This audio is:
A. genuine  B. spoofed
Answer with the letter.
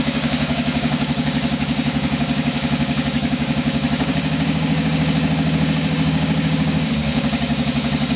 B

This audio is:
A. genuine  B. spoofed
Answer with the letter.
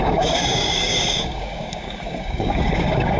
B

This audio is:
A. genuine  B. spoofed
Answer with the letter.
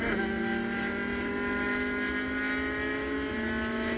A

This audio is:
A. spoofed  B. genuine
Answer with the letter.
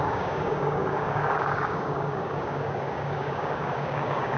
A